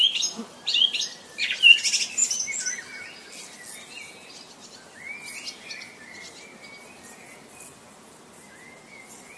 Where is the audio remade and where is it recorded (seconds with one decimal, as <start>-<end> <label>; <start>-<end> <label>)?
0.0-9.4 recorded